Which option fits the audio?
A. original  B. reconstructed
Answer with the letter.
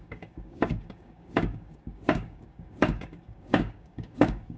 B